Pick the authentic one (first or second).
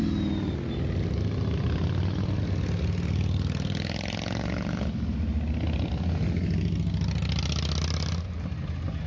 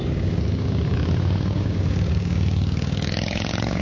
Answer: first